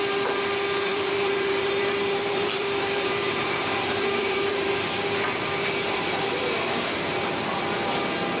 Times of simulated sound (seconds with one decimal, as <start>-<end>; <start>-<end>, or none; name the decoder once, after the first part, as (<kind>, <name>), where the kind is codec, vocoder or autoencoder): 0.9-4.7 (vocoder, BigVGAN v2)